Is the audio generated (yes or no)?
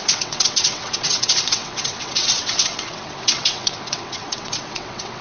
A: yes